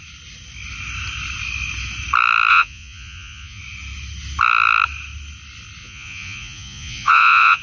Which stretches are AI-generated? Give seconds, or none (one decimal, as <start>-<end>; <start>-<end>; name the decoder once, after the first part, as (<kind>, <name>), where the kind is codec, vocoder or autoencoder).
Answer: 2.5-3.6 (vocoder, Vocos); 5.8-7.6